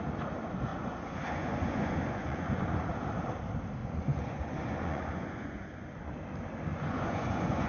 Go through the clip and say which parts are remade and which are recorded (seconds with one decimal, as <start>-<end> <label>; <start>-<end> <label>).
0.0-0.7 recorded; 0.7-2.9 remade; 2.9-3.8 recorded; 3.8-6.1 remade; 6.1-6.7 recorded; 6.7-7.7 remade